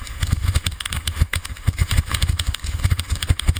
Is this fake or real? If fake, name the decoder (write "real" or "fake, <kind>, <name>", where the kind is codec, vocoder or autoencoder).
fake, autoencoder, DAC-VAE